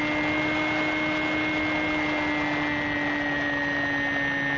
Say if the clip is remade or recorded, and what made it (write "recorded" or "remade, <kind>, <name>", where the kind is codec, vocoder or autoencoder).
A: recorded